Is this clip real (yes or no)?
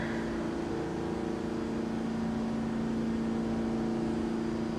yes